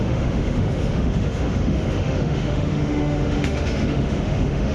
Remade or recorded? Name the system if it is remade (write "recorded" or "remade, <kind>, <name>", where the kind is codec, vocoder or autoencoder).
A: remade, autoencoder, DAC-VAE